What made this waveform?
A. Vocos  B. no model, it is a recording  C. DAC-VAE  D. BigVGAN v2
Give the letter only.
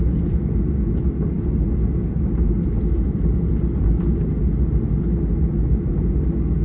B